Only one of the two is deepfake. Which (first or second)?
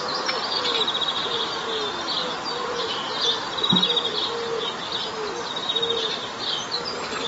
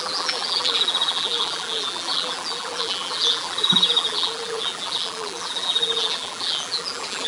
second